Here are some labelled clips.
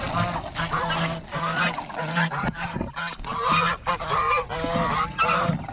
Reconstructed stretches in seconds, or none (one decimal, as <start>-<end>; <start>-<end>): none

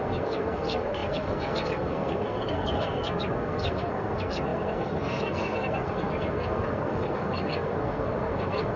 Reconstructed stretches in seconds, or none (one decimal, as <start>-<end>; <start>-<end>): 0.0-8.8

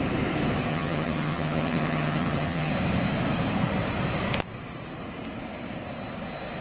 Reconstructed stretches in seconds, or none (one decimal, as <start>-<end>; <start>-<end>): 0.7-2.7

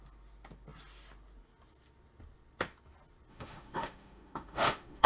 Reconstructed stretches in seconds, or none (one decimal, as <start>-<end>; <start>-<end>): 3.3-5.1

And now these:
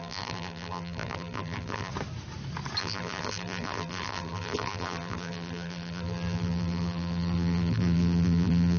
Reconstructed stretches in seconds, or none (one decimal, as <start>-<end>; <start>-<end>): 0.0-1.9; 2.8-8.8

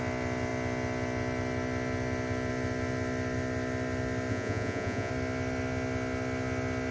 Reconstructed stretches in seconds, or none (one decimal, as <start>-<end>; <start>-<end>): 4.3-5.1

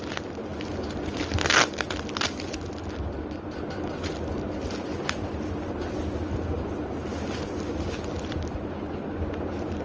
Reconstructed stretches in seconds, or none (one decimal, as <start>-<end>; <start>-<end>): none